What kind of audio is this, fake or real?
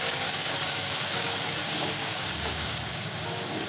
fake